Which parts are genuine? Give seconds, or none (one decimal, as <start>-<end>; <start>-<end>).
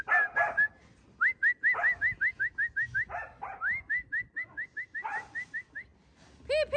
0.0-6.8